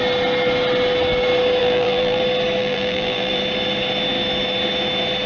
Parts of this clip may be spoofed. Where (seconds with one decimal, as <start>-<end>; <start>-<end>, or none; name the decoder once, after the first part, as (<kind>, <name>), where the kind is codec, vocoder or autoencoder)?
1.6-2.2 (vocoder, BigVGAN v2); 2.6-3.4